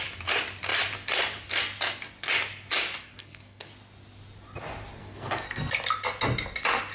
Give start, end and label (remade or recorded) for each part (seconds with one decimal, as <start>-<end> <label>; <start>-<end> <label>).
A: 0.0-3.0 recorded; 3.0-3.7 remade; 3.7-5.0 recorded; 5.0-5.7 remade; 5.7-6.9 recorded